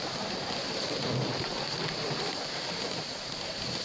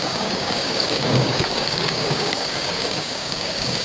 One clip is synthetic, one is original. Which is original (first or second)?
first